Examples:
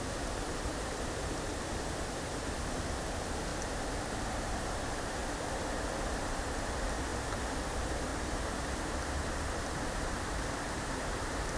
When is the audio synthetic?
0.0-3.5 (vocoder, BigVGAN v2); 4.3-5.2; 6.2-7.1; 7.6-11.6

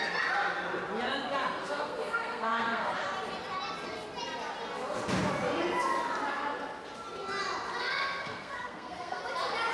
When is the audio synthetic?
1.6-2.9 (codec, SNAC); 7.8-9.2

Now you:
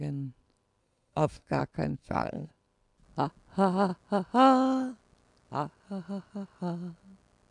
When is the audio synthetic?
0.8-1.6 (codec, SNAC); 2.0-2.5

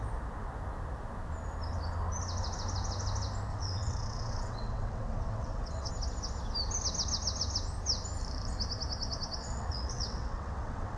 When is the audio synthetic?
3.5-5.9 (vocoder, WaveNeXt); 9.4-11.0